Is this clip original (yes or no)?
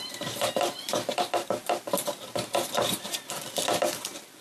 no